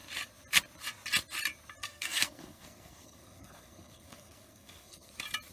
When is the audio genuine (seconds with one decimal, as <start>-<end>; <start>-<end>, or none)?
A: 0.0-1.8; 5.1-5.5